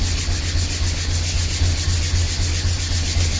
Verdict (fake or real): real